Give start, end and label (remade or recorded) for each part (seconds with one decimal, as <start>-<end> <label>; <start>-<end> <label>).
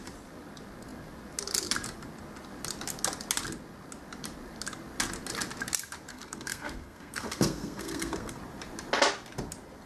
0.0-6.1 recorded; 6.1-8.4 remade; 8.4-9.9 recorded